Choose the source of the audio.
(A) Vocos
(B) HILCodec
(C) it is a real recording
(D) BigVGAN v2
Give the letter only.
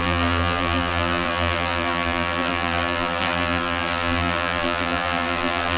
D